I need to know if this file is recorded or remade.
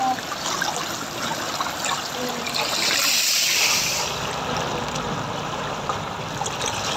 recorded